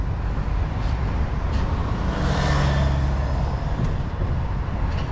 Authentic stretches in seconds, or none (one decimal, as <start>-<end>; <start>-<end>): 0.0-5.1